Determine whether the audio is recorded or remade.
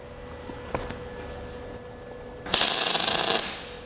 recorded